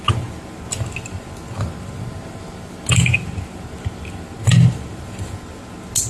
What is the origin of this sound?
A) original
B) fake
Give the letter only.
A